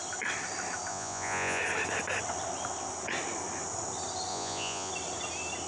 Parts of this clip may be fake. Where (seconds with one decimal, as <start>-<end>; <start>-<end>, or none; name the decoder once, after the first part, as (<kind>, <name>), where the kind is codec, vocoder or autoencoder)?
0.9-1.6 (vocoder, Vocos); 4.3-4.9

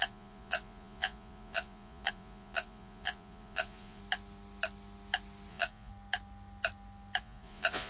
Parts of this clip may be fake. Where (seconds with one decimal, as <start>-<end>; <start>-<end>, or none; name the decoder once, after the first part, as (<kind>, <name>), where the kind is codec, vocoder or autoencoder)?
0.0-4.0 (vocoder, Vocos); 5.5-5.9; 7.2-7.9

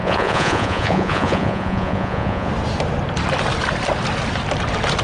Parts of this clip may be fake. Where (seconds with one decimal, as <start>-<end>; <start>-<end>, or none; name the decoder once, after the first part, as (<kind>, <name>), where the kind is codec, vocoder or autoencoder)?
0.0-2.5 (vocoder, Vocos)

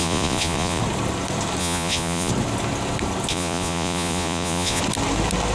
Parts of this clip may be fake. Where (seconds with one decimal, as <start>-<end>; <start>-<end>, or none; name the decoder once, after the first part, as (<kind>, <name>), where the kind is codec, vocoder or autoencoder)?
0.0-0.8 (vocoder, Vocos); 1.6-2.3; 3.3-4.8

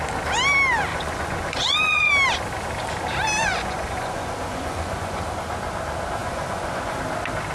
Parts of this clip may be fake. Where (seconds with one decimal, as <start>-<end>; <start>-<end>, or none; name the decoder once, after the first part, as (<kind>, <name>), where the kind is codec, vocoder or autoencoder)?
0.9-2.1 (vocoder, Vocos); 3.4-5.2; 6.2-7.0

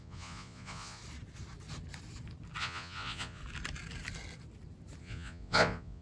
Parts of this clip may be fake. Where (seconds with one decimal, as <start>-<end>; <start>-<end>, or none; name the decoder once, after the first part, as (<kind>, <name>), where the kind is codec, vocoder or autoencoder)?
0.0-1.0 (vocoder, Vocos); 2.6-3.4; 5.0-6.0

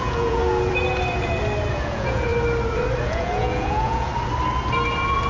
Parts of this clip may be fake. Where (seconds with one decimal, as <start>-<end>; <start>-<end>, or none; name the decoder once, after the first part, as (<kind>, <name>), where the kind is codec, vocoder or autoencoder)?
0.0-0.4 (vocoder, Vocos); 1.7-2.3; 3.0-4.1

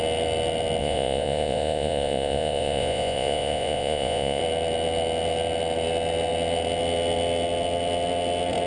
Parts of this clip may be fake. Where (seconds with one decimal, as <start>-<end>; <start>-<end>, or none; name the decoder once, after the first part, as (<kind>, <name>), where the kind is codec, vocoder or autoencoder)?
0.8-4.4 (vocoder, Vocos)